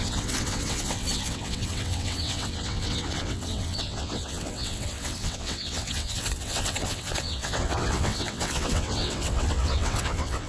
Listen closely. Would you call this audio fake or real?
fake